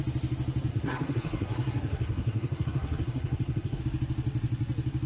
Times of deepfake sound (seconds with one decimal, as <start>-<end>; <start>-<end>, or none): 0.7-3.8